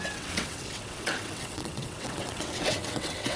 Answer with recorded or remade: remade